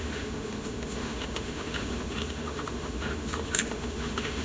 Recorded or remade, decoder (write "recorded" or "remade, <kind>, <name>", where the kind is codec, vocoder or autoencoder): remade, autoencoder, DAC-VAE